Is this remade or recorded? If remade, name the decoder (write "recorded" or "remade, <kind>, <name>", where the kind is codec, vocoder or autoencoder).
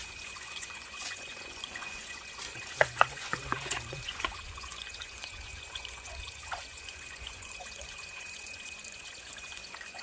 remade, vocoder, Vocos